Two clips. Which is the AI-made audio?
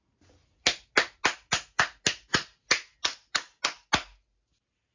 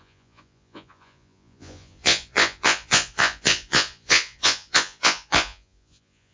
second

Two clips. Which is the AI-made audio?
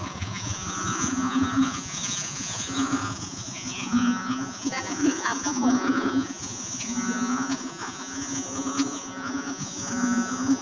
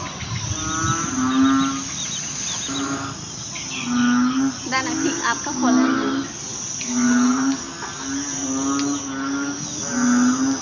first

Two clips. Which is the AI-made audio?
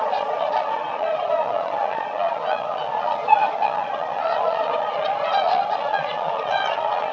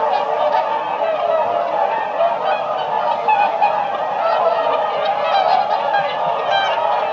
first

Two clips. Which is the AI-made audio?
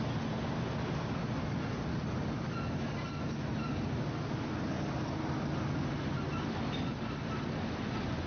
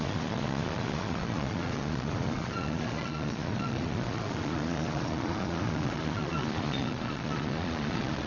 second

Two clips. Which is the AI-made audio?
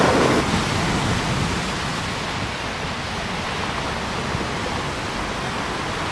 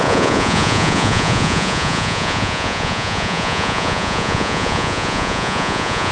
second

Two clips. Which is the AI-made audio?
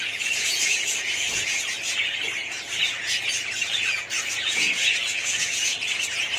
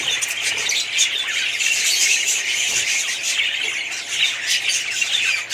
first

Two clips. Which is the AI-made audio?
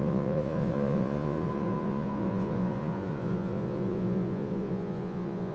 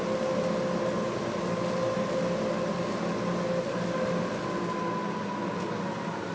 first